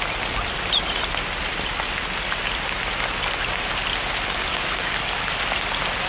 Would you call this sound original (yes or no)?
yes